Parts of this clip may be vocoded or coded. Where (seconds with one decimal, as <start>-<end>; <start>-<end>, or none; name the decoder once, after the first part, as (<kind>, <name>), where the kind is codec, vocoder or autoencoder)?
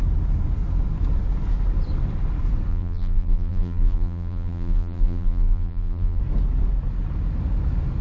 2.7-6.2 (vocoder, BigVGAN v2)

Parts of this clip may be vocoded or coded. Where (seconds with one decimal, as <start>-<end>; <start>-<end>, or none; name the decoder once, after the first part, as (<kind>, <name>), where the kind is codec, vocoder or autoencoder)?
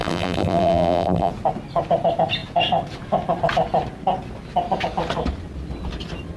0.0-1.3 (vocoder, BigVGAN v2)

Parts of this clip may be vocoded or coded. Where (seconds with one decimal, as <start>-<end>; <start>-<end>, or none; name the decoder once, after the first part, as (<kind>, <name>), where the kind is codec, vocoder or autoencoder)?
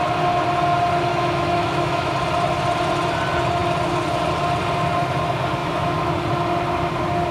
1.1-2.1 (autoencoder, DAC-VAE); 5.6-6.1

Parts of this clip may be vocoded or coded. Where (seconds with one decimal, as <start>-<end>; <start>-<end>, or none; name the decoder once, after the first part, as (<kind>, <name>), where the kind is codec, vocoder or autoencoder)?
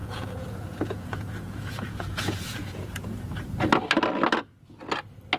0.0-3.2 (vocoder, Vocos)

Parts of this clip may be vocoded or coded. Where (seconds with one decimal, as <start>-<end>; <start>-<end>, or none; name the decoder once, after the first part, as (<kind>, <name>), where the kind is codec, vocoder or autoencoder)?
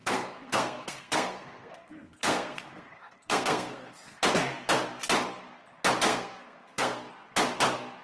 0.0-4.2 (codec, SNAC); 6.1-7.1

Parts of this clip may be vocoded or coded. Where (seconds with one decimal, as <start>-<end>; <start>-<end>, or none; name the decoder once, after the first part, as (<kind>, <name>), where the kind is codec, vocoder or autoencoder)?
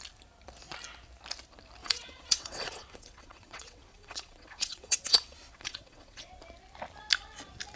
1.8-6.3 (vocoder, WaveNeXt)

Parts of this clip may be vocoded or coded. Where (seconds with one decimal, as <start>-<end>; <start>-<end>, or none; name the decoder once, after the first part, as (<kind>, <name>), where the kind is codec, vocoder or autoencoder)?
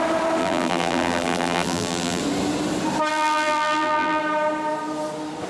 0.4-2.2 (vocoder, BigVGAN v2); 3.1-4.2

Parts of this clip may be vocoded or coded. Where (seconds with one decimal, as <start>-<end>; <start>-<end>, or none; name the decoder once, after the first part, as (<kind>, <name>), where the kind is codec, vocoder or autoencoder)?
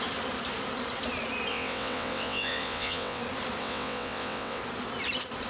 1.5-3.2 (vocoder, WaveNeXt); 3.6-4.6